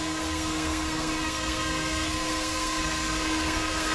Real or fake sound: fake